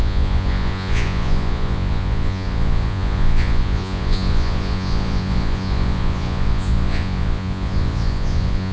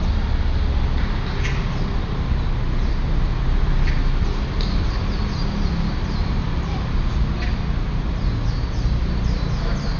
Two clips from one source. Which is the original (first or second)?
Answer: second